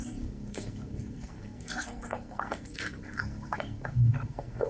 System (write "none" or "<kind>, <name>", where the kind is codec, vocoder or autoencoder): codec, SNAC